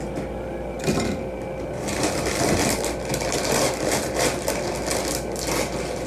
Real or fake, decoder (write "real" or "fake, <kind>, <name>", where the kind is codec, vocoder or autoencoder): real